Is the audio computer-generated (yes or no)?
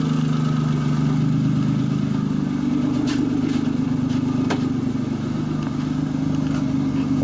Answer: no